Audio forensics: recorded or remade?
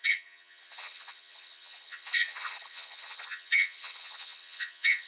remade